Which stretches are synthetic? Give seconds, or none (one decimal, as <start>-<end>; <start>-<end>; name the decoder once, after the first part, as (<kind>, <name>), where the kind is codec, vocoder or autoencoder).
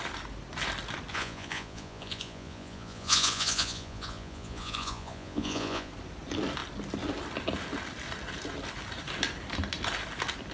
1.1-5.9 (vocoder, Vocos)